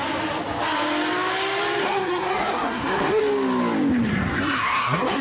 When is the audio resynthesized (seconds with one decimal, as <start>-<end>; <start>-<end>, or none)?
1.8-3.2; 4.1-5.2